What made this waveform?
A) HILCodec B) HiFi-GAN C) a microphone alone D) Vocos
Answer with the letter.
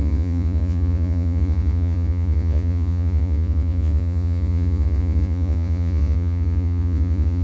D